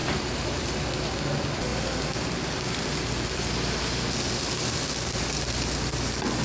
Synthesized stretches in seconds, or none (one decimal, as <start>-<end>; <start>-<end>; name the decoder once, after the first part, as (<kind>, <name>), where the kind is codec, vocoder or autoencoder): 0.0-0.7 (vocoder, BigVGAN v2)